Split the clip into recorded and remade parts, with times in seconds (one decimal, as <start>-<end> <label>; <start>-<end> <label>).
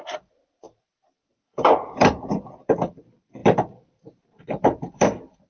0.0-5.5 remade